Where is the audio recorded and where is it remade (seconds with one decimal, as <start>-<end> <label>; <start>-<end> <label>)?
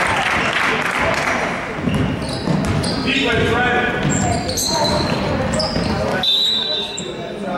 0.0-4.6 recorded; 4.6-5.2 remade; 5.2-6.1 recorded; 6.1-7.0 remade; 7.0-7.6 recorded